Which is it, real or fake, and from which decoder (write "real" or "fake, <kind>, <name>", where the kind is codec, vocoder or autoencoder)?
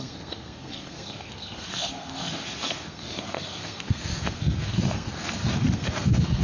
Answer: fake, codec, SNAC